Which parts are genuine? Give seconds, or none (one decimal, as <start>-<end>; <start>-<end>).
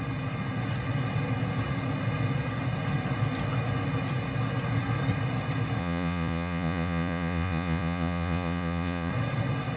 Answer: 0.0-5.8; 9.1-9.8